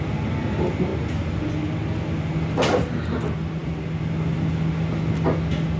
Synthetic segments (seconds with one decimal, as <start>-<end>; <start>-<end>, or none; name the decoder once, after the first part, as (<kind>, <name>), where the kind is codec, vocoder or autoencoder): none